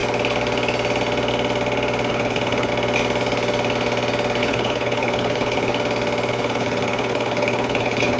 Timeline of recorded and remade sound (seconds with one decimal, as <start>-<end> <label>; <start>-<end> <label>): 0.0-2.1 recorded; 2.1-2.7 remade; 2.7-4.4 recorded; 4.4-5.7 remade; 5.7-6.3 recorded; 6.3-8.2 remade